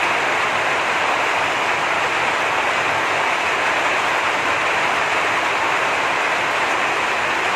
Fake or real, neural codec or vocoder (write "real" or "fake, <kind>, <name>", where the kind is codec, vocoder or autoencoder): real